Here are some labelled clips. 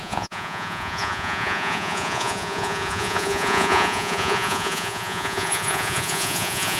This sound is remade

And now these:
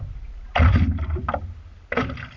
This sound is recorded